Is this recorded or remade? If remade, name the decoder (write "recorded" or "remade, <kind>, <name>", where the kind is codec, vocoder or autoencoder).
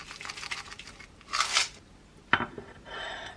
recorded